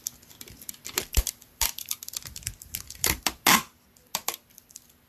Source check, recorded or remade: recorded